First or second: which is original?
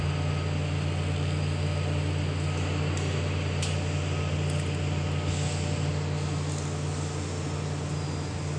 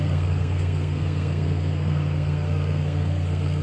first